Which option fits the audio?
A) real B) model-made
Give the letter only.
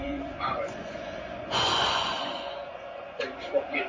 B